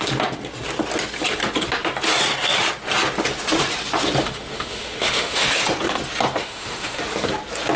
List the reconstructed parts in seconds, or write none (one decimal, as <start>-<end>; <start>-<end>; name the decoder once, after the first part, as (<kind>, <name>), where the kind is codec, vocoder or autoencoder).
4.2-5.6 (autoencoder, DAC-VAE); 6.4-7.0